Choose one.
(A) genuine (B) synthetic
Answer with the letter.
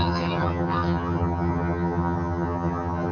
B